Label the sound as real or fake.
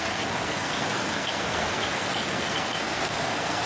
fake